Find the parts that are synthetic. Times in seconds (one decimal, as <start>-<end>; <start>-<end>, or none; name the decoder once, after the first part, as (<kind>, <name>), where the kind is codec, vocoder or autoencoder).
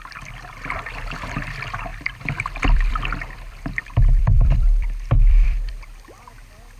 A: 1.9-5.7 (vocoder, BigVGAN v2)